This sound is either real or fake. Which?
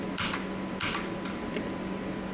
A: real